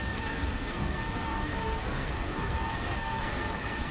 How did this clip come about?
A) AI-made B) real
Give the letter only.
A